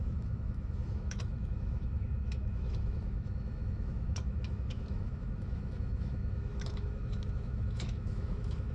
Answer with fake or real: fake